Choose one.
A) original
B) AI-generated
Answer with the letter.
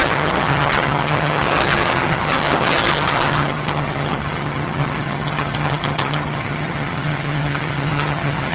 B